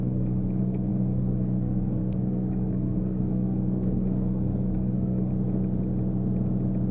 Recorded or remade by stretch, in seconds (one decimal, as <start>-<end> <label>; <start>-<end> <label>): 0.0-5.3 remade; 5.3-6.9 recorded